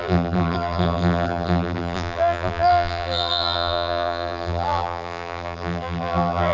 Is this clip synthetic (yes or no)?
yes